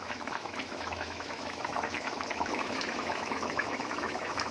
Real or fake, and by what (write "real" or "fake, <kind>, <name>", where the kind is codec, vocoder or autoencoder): fake, autoencoder, DAC-VAE